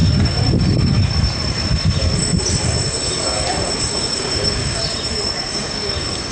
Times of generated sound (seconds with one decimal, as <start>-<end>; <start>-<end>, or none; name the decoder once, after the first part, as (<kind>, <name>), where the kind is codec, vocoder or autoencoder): 3.8-4.8 (codec, DAC); 5.5-6.3